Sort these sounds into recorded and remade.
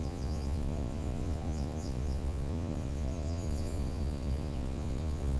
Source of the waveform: remade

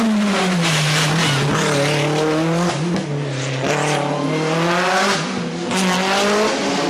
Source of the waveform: recorded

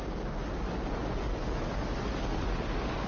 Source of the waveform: recorded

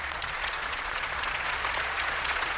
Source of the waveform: remade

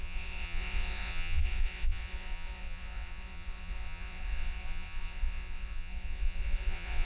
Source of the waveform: remade